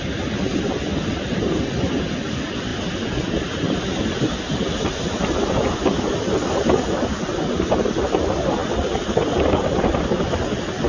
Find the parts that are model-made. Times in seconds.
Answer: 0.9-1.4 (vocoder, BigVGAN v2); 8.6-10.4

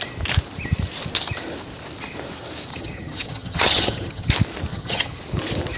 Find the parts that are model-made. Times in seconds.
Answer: 2.7-4.3 (vocoder, HiFi-GAN); 4.7-5.2